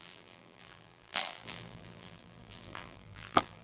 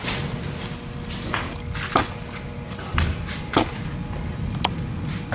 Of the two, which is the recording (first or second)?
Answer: second